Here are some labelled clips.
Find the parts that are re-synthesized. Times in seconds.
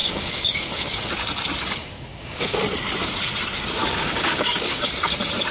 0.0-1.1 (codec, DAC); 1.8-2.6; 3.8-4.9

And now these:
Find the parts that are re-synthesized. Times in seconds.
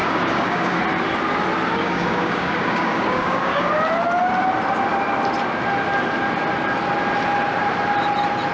0.0-0.8 (codec, DAC); 1.8-3.7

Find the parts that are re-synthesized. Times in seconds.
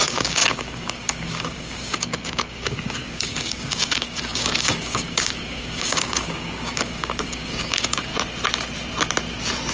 0.0-8.1 (codec, DAC)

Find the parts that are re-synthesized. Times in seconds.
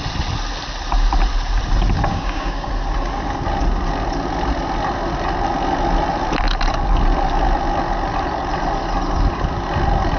2.1-2.7 (codec, DAC)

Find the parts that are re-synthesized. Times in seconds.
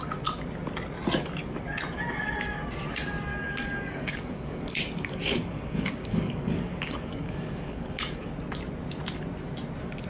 3.3-8.3 (codec, DAC)